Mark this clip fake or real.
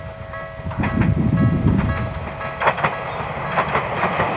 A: real